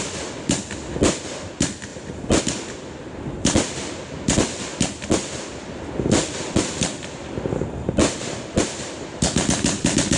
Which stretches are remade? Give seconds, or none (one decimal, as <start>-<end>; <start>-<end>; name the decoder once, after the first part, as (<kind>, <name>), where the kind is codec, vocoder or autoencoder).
none